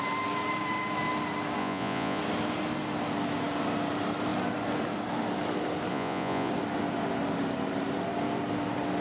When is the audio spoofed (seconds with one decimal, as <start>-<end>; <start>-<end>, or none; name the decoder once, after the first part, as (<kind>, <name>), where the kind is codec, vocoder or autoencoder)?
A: 1.6-2.2 (vocoder, Vocos); 5.9-6.5